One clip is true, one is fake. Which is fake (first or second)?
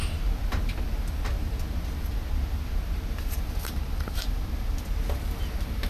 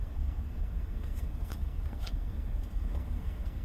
second